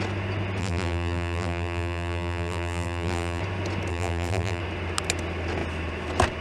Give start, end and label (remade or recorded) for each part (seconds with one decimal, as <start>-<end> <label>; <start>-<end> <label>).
0.0-0.6 recorded; 0.6-3.4 remade; 3.4-3.9 recorded; 3.9-4.6 remade; 4.6-6.4 recorded